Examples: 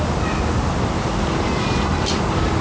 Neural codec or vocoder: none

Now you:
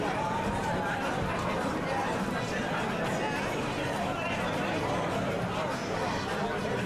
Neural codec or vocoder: none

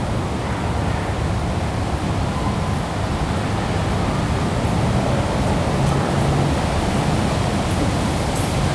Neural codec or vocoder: none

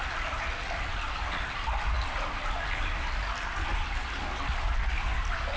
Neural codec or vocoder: none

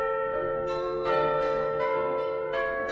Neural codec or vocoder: codec, SNAC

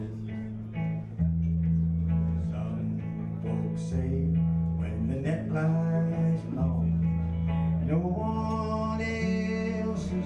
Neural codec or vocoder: none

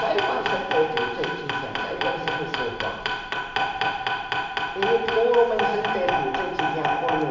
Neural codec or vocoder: none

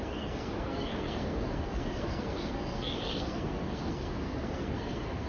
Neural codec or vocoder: codec, SNAC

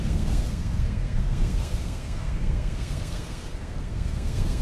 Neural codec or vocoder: codec, SNAC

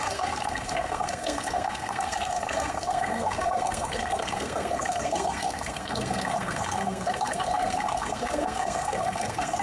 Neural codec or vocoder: codec, SNAC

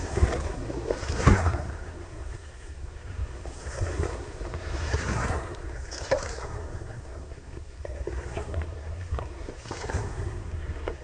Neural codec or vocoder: codec, SNAC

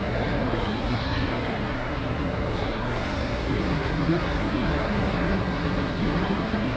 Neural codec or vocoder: codec, SNAC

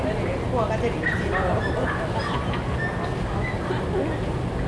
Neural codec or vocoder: none